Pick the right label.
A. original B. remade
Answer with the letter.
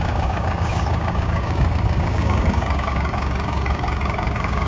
B